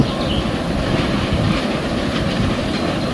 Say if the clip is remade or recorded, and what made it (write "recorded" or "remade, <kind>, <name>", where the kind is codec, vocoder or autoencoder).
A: recorded